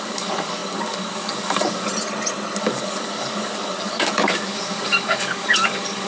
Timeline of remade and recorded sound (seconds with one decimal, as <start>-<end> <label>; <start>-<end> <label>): 0.0-1.9 remade; 1.9-2.6 recorded; 2.6-6.1 remade